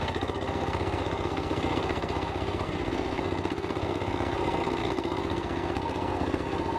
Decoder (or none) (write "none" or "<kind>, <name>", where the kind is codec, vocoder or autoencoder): codec, SNAC